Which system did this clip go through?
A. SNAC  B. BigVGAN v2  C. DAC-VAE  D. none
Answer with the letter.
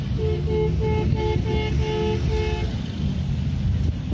D